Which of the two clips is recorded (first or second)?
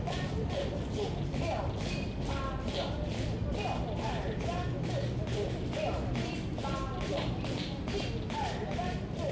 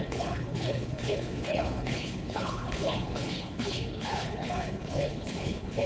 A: first